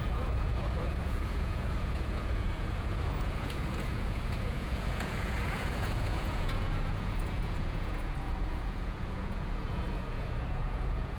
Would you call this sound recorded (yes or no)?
no